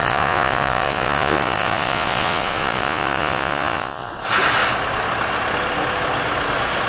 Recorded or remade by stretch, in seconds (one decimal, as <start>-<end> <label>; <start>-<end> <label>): 0.0-4.1 remade; 4.1-6.9 recorded